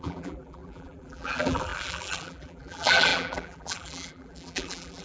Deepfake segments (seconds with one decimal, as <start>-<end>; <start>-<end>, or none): 0.0-5.0